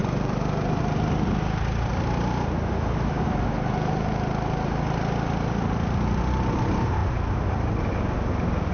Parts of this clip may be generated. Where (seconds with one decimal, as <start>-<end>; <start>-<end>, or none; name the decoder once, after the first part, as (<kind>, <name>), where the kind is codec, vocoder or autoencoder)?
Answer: 0.0-0.8 (vocoder, BigVGAN v2); 7.0-7.8